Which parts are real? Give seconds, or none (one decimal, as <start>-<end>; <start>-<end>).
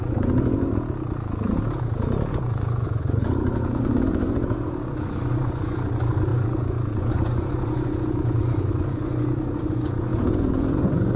0.7-2.3